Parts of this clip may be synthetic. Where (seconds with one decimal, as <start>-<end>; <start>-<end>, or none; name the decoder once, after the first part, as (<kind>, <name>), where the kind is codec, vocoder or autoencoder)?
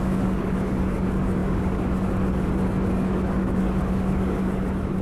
0.0-5.0 (codec, DAC)